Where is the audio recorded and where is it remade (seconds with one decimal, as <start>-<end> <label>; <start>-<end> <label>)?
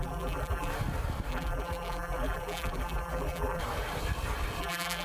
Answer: 0.0-0.7 remade; 0.7-1.3 recorded; 1.3-3.6 remade; 3.6-4.6 recorded; 4.6-5.0 remade